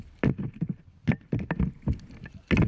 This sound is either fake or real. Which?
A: real